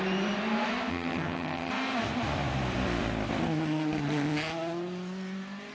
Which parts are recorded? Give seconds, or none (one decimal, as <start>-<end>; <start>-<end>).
0.0-0.9; 1.7-5.7